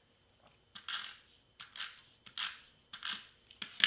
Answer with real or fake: real